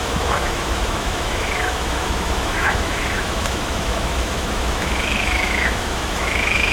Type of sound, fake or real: fake